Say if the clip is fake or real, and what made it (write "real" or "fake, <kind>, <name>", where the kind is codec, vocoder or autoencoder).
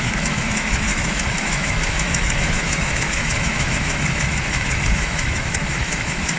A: fake, autoencoder, DAC-VAE